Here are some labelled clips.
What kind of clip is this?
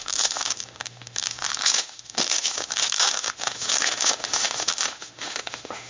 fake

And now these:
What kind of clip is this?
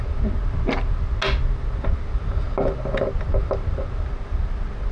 real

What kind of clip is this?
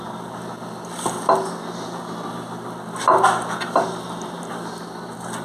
real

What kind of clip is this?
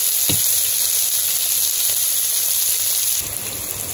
real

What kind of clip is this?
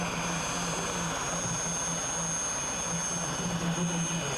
real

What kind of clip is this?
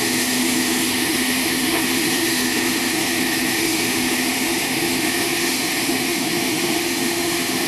fake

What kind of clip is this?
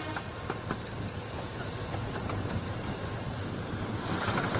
real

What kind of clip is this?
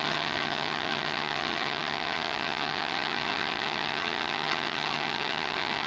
fake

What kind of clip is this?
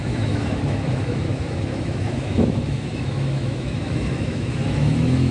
fake